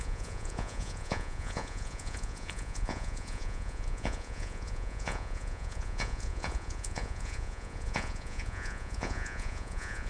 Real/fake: fake